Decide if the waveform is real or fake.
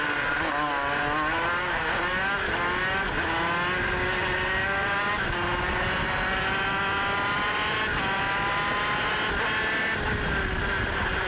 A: real